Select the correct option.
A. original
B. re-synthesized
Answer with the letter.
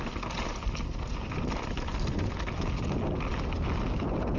A